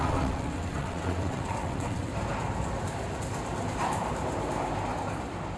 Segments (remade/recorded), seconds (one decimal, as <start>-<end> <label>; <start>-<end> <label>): 0.0-2.1 remade; 2.1-5.6 recorded